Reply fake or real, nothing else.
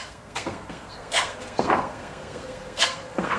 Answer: fake